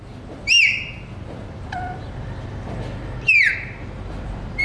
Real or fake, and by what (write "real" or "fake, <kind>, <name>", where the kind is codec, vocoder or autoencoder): fake, vocoder, BigVGAN v2